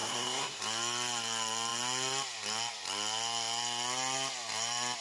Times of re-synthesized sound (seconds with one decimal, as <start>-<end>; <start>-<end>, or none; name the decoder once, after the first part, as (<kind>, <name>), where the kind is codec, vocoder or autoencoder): 0.0-0.6 (codec, SNAC)